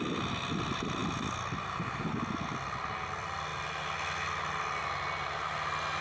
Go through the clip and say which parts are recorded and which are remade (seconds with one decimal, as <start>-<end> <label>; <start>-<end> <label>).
0.0-6.0 recorded